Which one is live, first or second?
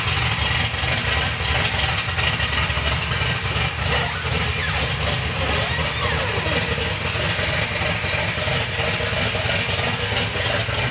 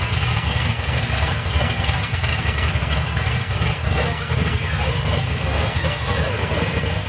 first